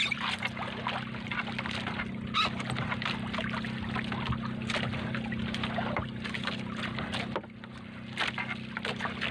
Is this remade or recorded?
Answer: recorded